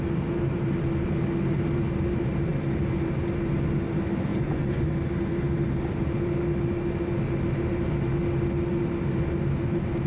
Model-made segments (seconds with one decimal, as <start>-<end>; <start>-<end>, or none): 4.3-4.8